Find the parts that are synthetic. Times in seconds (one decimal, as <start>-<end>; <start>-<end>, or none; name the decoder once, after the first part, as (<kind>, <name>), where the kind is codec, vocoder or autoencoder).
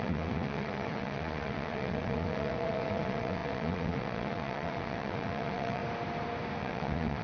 0.0-5.8 (vocoder, WaveNeXt); 6.6-7.2